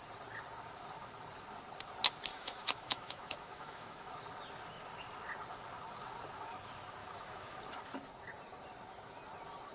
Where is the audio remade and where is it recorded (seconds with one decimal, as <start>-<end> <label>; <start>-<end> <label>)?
0.0-2.3 recorded; 2.3-4.1 remade; 4.1-7.0 recorded; 7.0-7.6 remade; 7.6-9.7 recorded